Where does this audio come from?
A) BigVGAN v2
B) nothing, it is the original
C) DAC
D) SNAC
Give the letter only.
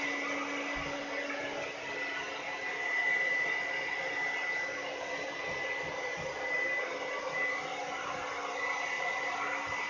B